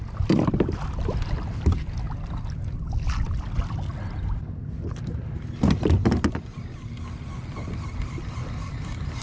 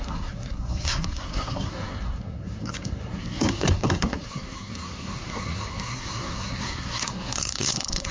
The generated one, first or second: second